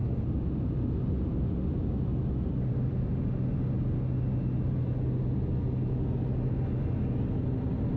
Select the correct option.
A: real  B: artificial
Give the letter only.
A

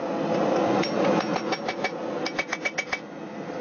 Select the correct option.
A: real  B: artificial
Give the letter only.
A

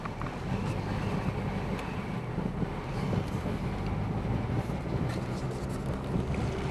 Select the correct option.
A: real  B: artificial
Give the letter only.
A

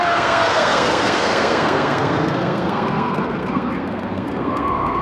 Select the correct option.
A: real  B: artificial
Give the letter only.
B